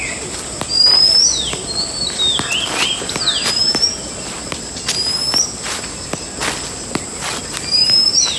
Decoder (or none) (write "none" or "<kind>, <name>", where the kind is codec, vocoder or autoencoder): none